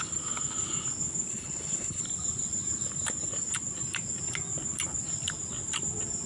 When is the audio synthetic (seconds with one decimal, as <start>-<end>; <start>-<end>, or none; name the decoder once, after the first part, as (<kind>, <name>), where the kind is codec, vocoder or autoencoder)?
1.3-2.0 (codec, HILCodec)